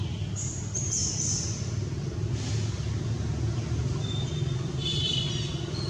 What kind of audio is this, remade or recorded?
recorded